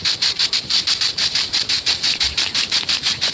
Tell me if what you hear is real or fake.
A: fake